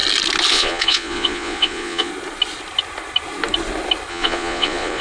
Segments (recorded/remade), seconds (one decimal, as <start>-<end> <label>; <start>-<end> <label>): 0.0-0.5 recorded; 0.5-2.1 remade; 2.1-4.1 recorded; 4.1-5.0 remade

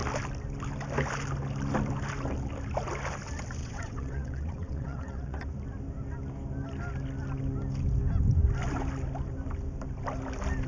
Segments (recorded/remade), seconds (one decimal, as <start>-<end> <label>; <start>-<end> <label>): 0.0-3.6 recorded; 3.6-5.4 remade; 5.4-10.7 recorded

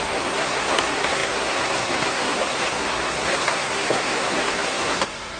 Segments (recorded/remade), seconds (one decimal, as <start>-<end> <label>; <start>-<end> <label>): 0.0-5.4 remade

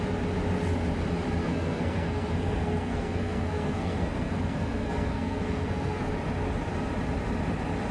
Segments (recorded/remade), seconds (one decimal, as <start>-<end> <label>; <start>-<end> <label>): 0.0-1.4 recorded; 1.4-6.1 remade; 6.1-7.9 recorded